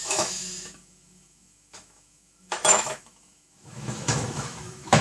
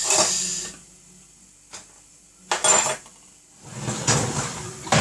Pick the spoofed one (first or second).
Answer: first